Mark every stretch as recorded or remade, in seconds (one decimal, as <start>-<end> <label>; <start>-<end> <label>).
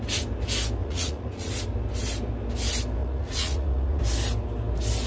0.0-0.8 recorded; 0.8-1.5 remade; 1.5-3.0 recorded; 3.0-4.0 remade; 4.0-5.1 recorded